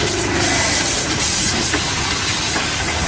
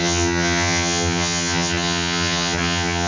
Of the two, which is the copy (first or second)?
second